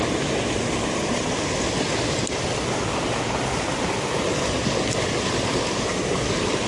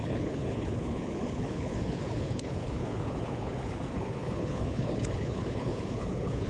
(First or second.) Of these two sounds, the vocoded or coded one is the second